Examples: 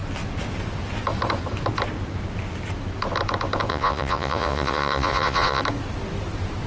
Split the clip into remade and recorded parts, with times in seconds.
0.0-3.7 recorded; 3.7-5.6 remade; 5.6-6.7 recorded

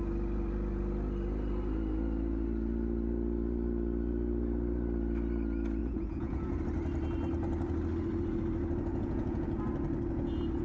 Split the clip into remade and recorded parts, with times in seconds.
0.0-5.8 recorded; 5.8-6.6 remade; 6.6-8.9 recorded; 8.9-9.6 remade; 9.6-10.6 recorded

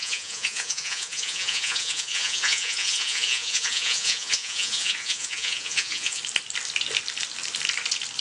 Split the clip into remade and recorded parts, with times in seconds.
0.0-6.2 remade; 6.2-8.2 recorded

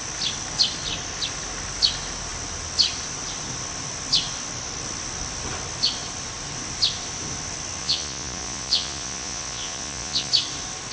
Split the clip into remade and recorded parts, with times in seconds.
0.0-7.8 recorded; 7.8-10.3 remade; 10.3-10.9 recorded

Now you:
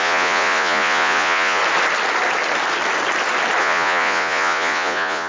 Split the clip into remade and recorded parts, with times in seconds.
0.0-1.6 remade; 1.6-3.6 recorded; 3.6-5.3 remade